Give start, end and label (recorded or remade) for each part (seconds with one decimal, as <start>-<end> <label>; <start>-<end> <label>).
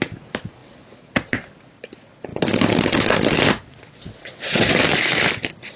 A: 0.0-3.6 recorded; 3.6-4.8 remade; 4.8-5.8 recorded